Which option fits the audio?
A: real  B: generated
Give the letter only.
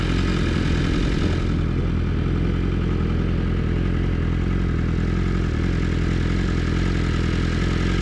A